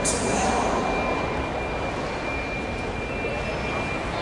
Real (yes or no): yes